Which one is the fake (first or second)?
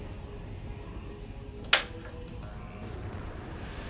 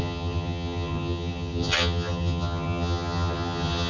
second